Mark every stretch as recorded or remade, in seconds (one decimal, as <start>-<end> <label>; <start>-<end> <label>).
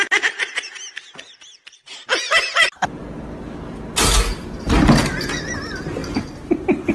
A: 0.0-6.9 recorded